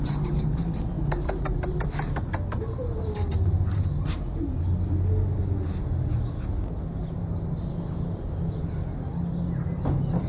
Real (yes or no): yes